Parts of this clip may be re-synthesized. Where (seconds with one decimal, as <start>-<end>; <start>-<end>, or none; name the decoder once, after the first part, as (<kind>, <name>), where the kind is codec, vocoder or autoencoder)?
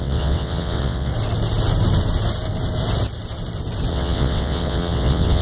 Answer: 0.0-1.1 (vocoder, WaveNeXt); 3.9-5.4